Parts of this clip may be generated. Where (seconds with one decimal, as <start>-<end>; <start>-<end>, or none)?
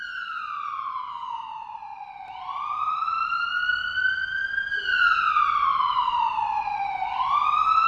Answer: 1.9-5.3; 5.7-6.3